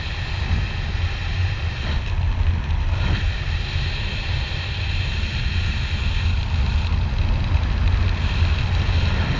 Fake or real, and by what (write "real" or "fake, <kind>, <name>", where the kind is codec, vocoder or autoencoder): real